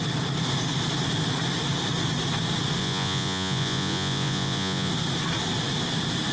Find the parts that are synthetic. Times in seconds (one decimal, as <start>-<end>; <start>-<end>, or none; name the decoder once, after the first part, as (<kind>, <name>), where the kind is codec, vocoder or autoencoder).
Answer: 2.8-4.9 (vocoder, Vocos)